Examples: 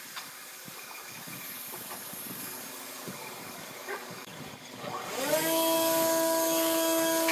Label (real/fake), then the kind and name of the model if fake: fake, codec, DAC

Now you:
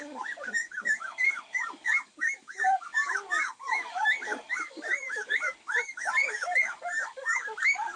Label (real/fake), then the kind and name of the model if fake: fake, codec, DAC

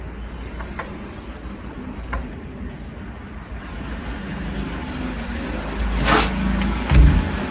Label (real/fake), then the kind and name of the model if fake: real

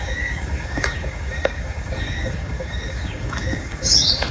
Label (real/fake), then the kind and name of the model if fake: fake, codec, DAC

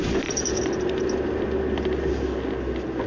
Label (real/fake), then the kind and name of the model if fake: real